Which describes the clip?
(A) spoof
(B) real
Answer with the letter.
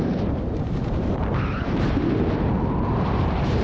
A